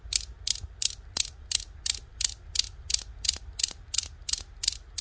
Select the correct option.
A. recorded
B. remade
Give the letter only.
A